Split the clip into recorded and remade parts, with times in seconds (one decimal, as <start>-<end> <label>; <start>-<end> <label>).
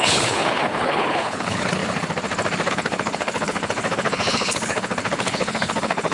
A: 0.0-1.8 remade; 1.8-2.7 recorded; 2.7-6.1 remade